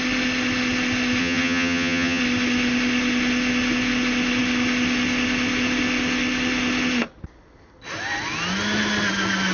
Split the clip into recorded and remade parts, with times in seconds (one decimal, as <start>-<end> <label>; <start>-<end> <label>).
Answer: 0.0-1.2 recorded; 1.2-2.2 remade; 2.2-9.5 recorded